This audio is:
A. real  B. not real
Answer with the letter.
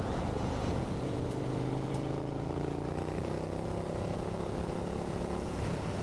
B